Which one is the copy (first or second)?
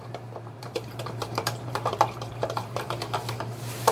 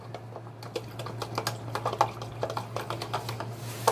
first